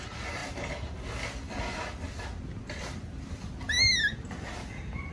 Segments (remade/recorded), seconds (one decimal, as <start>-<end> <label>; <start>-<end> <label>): 0.0-5.1 recorded